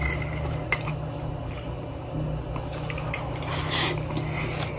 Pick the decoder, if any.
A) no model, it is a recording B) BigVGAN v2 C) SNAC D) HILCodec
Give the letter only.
A